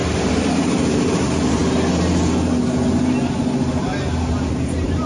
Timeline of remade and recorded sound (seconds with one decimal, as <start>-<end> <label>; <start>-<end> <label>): 0.0-0.5 recorded; 0.5-1.6 remade; 1.6-4.5 recorded; 4.5-5.1 remade